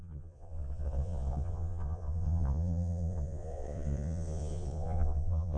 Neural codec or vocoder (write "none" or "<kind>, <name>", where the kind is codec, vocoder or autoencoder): vocoder, Vocos